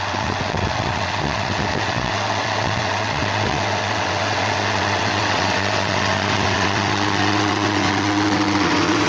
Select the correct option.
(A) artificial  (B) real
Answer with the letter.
A